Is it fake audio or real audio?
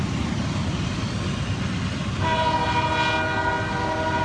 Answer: real